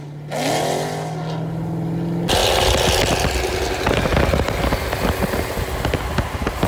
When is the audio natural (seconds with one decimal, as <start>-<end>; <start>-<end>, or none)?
0.0-6.7